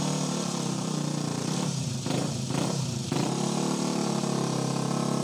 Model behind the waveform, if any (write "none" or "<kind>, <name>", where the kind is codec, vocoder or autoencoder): vocoder, BigVGAN v2